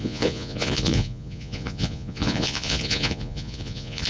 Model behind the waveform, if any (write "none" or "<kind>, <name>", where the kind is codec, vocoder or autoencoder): vocoder, Vocos